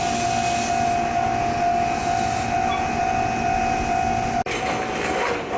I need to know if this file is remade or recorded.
recorded